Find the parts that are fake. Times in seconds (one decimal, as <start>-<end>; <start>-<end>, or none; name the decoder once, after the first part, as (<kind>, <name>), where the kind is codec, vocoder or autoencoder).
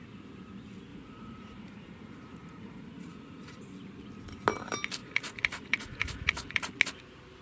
0.9-3.6 (vocoder, Vocos); 5.0-6.7